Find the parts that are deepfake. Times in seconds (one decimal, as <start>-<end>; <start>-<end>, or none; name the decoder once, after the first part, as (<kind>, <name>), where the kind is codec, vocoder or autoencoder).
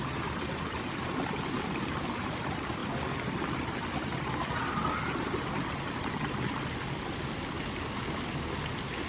none